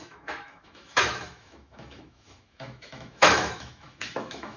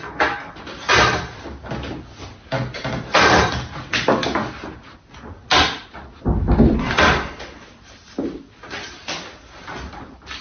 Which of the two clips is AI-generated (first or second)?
first